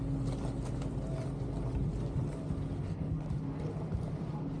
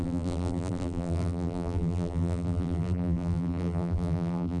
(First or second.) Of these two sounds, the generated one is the second